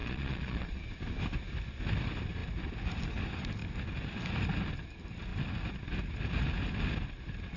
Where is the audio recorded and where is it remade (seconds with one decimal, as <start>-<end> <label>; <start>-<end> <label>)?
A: 0.0-0.8 remade; 0.8-7.6 recorded

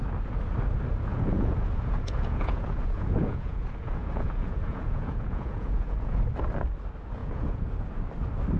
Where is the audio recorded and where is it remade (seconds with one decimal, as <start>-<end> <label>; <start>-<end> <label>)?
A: 0.0-1.1 recorded; 1.1-6.2 remade; 6.2-7.2 recorded; 7.2-7.7 remade; 7.7-8.6 recorded

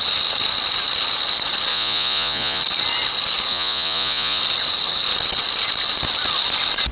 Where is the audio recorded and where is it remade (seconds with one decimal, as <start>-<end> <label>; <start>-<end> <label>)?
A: 0.0-1.7 recorded; 1.7-2.6 remade; 2.6-3.5 recorded; 3.5-4.4 remade; 4.4-6.9 recorded

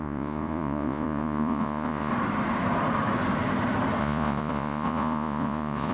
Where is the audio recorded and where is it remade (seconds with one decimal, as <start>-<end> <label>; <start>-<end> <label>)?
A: 0.0-2.1 remade; 2.1-4.0 recorded; 4.0-5.9 remade

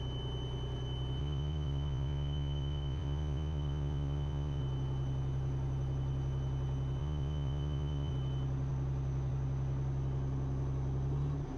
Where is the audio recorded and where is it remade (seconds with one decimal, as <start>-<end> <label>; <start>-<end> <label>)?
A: 0.0-1.2 recorded; 1.2-4.6 remade; 4.6-7.0 recorded; 7.0-8.1 remade; 8.1-11.6 recorded

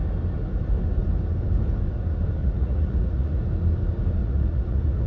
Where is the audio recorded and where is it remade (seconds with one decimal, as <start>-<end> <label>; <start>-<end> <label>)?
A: 0.0-2.4 recorded; 2.4-3.4 remade; 3.4-4.2 recorded; 4.2-5.1 remade

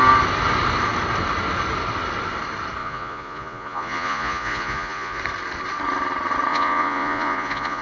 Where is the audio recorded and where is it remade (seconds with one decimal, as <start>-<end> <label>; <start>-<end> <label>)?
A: 0.0-2.8 recorded; 2.8-5.2 remade; 5.2-6.5 recorded; 6.5-7.8 remade

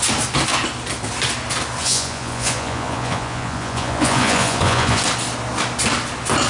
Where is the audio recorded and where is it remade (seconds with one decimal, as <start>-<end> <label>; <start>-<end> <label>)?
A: 0.0-1.8 recorded; 1.8-5.0 remade; 5.0-6.5 recorded